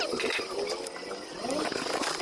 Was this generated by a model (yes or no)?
no